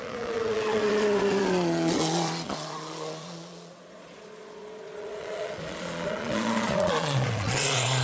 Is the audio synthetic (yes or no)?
yes